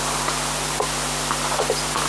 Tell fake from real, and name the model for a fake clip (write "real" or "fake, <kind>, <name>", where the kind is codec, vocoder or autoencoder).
real